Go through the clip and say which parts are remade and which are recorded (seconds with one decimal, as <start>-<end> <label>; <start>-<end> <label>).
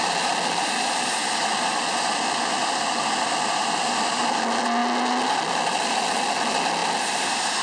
0.0-7.6 recorded